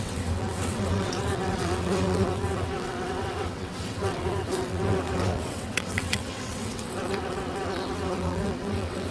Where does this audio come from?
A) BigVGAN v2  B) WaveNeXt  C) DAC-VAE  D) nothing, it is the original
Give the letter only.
B